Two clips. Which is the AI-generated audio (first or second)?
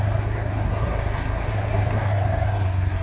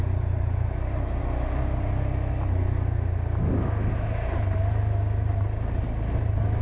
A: first